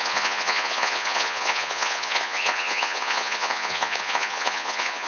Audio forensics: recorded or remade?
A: remade